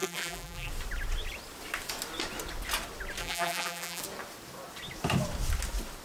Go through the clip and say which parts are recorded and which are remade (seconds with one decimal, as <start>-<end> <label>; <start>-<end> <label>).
0.0-0.7 remade; 0.7-3.2 recorded; 3.2-4.0 remade; 4.0-6.0 recorded